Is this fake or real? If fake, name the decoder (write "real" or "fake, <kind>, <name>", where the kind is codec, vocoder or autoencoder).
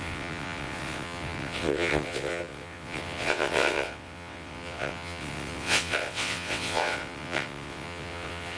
fake, vocoder, WaveNeXt